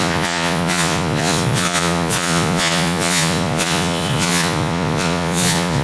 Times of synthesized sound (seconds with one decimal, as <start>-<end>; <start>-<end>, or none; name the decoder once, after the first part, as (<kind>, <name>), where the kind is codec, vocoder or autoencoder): 0.0-5.8 (vocoder, Vocos)